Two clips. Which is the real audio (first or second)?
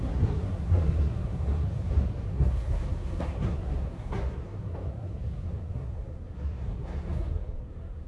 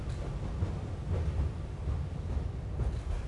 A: second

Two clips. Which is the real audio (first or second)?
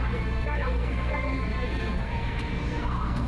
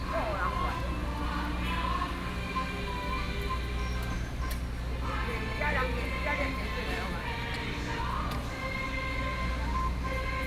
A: second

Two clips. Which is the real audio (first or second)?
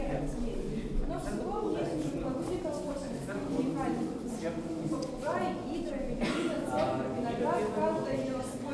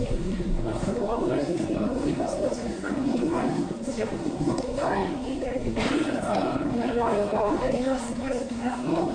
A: first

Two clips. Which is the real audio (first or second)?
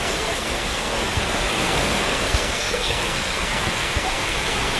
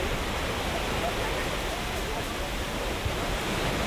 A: second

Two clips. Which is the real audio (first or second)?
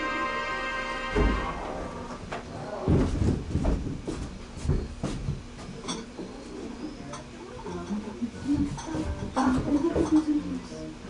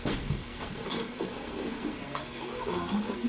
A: first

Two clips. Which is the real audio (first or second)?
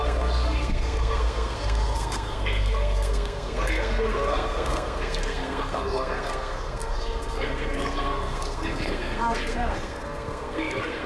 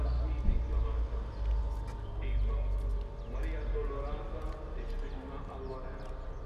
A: second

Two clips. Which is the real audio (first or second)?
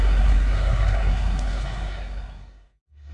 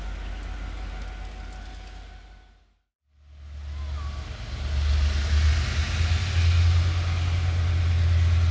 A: second